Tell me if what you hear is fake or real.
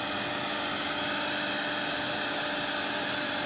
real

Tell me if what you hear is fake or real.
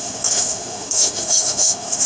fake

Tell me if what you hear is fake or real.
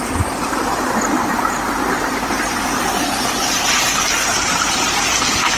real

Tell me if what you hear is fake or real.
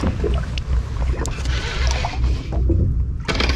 real